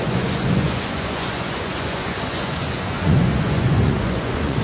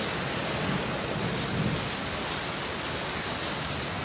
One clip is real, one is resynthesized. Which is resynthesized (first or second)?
first